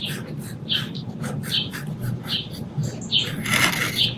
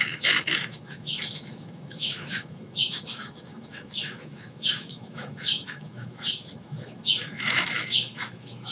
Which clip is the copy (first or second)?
second